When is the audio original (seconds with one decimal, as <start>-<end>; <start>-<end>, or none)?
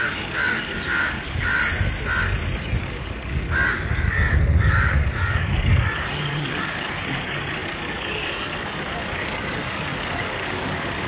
1.5-2.8